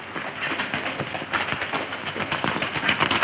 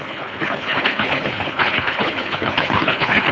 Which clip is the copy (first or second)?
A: second